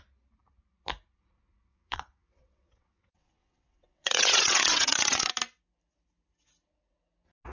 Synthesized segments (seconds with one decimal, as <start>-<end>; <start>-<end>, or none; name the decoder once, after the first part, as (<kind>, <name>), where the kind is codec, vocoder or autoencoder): 1.7-5.3 (vocoder, WaveNeXt)